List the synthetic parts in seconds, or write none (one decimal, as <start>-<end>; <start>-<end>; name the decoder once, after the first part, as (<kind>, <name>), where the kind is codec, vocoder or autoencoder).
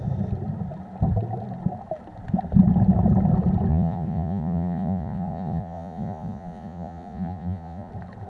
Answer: 3.7-7.9 (vocoder, Vocos)